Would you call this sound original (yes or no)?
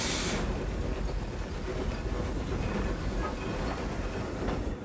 yes